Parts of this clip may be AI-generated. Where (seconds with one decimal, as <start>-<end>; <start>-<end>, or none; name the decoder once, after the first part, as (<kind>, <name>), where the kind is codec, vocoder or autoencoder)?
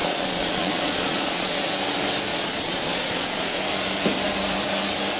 0.0-1.7 (vocoder, Vocos); 2.3-3.6